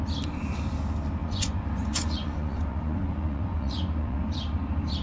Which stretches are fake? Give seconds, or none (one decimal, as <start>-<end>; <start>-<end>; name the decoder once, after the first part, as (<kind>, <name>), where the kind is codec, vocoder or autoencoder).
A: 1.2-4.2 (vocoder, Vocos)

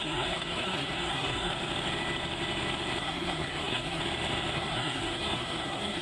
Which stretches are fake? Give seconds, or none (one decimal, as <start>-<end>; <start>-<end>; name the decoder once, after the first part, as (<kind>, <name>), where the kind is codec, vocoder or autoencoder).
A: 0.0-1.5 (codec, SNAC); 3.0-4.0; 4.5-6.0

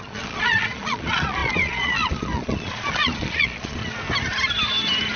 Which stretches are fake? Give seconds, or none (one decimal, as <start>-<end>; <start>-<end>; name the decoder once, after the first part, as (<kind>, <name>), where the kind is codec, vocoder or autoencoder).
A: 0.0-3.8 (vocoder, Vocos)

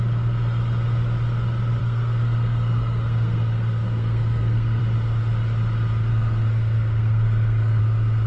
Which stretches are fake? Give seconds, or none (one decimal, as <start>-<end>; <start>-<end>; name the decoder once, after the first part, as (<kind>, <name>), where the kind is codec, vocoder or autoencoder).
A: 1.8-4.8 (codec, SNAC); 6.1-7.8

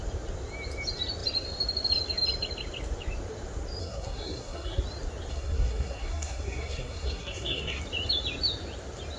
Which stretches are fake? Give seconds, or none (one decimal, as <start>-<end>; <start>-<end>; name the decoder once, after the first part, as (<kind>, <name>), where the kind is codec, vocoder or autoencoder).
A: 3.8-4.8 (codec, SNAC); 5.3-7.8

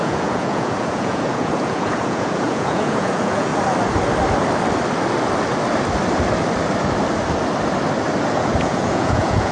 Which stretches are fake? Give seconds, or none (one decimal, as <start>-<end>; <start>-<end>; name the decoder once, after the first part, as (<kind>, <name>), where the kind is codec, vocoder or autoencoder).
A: 0.0-3.5 (vocoder, Vocos); 8.3-9.5